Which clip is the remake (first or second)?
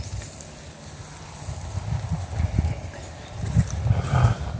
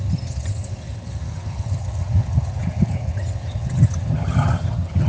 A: second